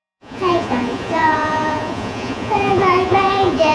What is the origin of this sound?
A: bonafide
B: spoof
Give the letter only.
B